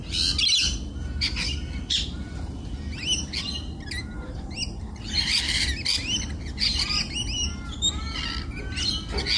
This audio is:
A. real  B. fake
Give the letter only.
A